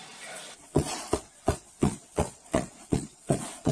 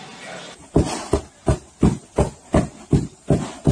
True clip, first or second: second